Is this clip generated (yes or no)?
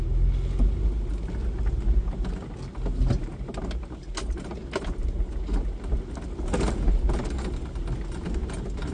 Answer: no